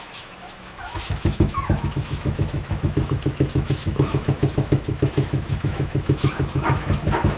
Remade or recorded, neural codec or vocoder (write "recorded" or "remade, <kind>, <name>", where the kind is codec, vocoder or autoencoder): remade, autoencoder, DAC-VAE